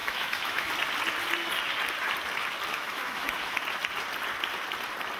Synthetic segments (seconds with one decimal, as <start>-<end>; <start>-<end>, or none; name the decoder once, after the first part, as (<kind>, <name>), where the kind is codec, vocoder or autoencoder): 0.0-0.7 (autoencoder, DAC-VAE); 2.7-3.6